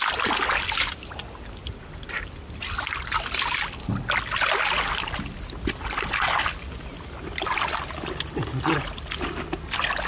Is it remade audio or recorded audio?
recorded